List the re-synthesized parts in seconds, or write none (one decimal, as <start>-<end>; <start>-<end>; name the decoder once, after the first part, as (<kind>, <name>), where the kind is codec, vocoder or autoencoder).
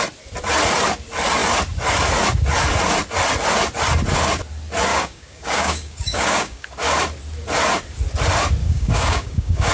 4.9-6.7 (codec, DAC); 8.6-9.7